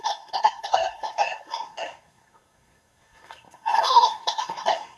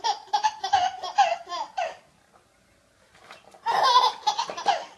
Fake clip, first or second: first